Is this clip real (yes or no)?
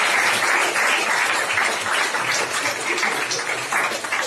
yes